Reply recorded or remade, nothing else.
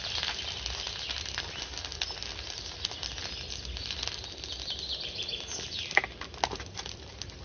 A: recorded